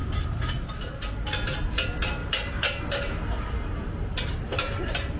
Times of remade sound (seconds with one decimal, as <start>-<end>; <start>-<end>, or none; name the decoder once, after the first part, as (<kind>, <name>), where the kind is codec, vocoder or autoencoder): 2.2-2.8 (vocoder, BigVGAN v2)